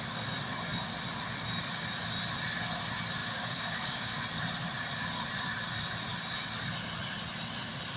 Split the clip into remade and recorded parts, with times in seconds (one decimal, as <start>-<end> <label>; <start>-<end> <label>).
0.0-3.2 recorded; 3.2-4.2 remade; 4.2-8.0 recorded